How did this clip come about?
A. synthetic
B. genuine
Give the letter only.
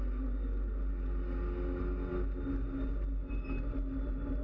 B